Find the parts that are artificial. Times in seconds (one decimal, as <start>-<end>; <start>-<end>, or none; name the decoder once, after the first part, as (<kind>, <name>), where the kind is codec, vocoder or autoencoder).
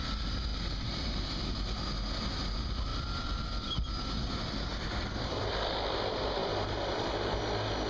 2.9-4.0 (vocoder, BigVGAN v2); 4.7-5.5; 6.4-7.1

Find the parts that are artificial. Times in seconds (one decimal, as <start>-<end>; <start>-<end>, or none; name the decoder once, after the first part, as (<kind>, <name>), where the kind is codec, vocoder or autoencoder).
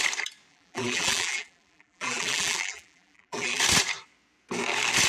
0.5-3.6 (vocoder, BigVGAN v2)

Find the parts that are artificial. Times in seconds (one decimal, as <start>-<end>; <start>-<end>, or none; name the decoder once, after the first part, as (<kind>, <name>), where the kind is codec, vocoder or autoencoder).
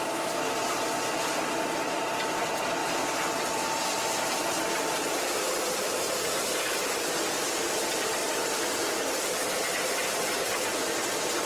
0.0-11.5 (vocoder, BigVGAN v2)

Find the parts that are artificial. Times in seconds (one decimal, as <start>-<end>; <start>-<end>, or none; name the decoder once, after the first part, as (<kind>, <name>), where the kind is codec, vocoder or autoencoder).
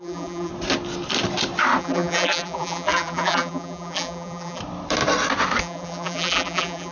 0.0-0.5 (vocoder, BigVGAN v2); 1.8-4.6; 5.6-6.9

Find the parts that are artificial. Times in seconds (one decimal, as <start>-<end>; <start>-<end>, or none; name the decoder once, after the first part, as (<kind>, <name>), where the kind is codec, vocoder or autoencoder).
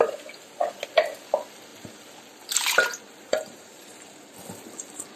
3.3-4.0 (vocoder, BigVGAN v2)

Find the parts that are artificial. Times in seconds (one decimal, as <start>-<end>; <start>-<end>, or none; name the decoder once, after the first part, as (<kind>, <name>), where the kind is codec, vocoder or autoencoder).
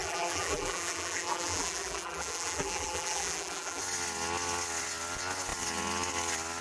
0.0-3.8 (vocoder, BigVGAN v2)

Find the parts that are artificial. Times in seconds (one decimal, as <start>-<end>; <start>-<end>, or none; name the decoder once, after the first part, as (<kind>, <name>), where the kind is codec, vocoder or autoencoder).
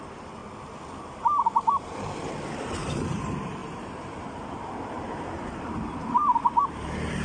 0.0-0.4 (vocoder, BigVGAN v2); 2.6-7.2